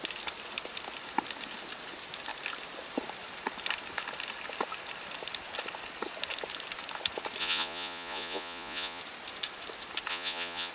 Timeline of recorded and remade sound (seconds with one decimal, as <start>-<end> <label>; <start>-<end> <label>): 0.0-7.4 recorded; 7.4-9.0 remade; 9.0-10.1 recorded; 10.1-10.7 remade